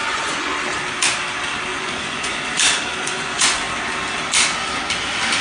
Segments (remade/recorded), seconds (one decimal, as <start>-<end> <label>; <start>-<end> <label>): 0.0-0.5 remade; 0.5-1.7 recorded; 1.7-2.4 remade; 2.4-2.9 recorded; 2.9-3.6 remade; 3.6-5.4 recorded